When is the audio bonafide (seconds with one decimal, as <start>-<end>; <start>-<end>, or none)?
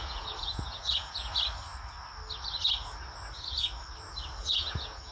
1.3-4.4